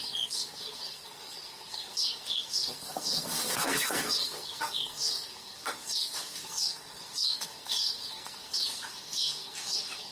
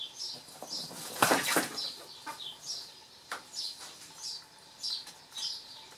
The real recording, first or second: second